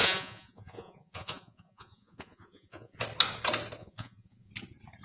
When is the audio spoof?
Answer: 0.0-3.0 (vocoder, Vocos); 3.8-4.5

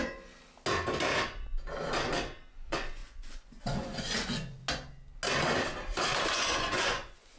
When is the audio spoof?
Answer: 0.0-0.4 (vocoder, Vocos); 2.5-4.6; 6.3-7.4